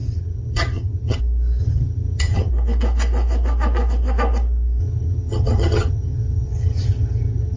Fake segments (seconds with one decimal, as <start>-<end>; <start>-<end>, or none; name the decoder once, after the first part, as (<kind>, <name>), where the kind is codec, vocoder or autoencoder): 0.0-1.2 (vocoder, HiFi-GAN); 1.6-2.5; 4.8-7.6